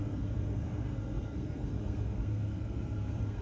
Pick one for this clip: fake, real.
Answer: fake